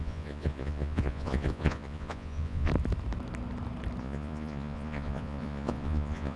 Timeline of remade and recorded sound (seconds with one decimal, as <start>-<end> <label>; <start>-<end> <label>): 0.0-2.7 remade; 2.7-4.0 recorded; 4.0-6.4 remade